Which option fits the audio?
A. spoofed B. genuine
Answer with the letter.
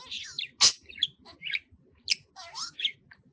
B